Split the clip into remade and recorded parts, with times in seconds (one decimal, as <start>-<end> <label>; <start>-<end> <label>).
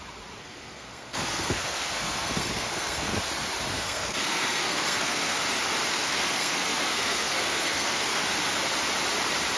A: 0.0-0.4 recorded; 0.4-3.2 remade; 3.2-3.7 recorded; 3.7-5.4 remade; 5.4-5.9 recorded; 5.9-8.2 remade; 8.2-9.6 recorded